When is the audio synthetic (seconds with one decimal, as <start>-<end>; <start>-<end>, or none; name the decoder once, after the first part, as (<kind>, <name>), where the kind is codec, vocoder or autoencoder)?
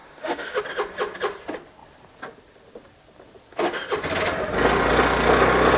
0.0-0.6 (autoencoder, DAC-VAE)